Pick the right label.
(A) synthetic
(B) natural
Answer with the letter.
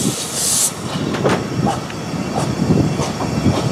B